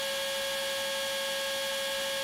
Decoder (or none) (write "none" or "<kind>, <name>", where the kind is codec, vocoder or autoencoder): none